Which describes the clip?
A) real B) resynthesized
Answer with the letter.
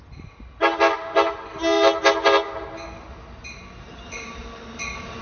A